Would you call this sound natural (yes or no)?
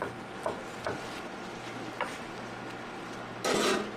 yes